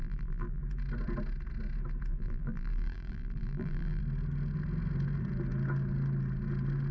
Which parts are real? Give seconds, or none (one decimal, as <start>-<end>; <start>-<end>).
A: 0.6-2.1; 4.0-6.9